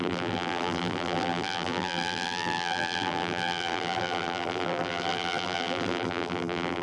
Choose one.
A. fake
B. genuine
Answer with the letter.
A